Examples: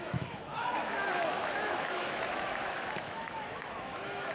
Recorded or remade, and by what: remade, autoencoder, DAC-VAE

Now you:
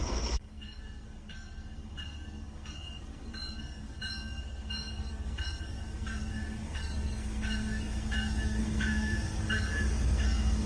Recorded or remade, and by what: remade, codec, SNAC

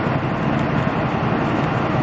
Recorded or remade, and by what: recorded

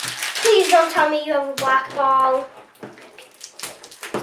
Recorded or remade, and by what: recorded